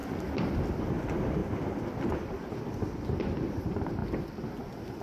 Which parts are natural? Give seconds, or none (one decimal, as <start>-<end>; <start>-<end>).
0.0-5.0

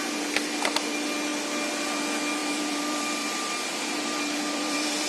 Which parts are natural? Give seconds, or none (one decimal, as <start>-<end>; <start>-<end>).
0.0-2.4

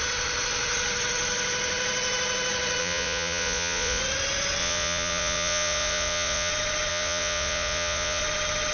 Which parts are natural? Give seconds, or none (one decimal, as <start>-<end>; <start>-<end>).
0.0-2.8; 4.0-4.6; 6.5-6.9; 8.2-8.7

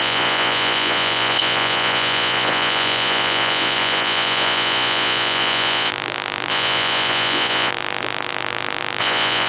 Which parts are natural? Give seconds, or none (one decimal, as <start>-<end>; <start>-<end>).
5.9-6.5; 7.7-9.0

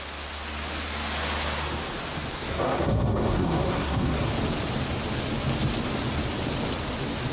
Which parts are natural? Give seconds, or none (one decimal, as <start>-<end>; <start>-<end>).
0.0-2.3; 4.3-7.3

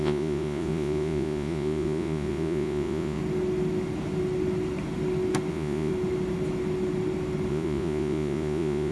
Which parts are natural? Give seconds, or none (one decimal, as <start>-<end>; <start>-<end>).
3.2-5.5; 5.9-7.5